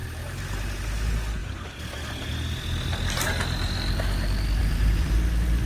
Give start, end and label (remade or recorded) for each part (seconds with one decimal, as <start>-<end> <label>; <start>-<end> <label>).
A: 0.0-0.7 remade; 0.7-4.6 recorded; 4.6-5.2 remade; 5.2-5.7 recorded